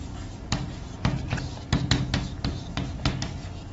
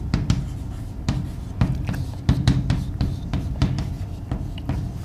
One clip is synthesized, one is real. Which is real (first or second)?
first